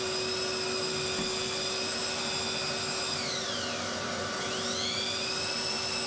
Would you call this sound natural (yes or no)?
yes